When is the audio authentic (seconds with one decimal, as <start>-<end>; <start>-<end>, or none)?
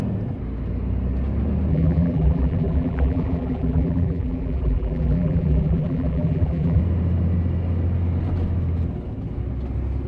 0.0-1.7; 6.8-10.1